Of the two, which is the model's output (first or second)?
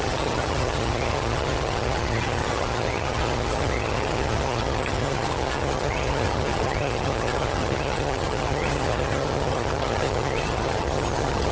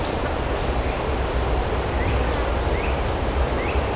first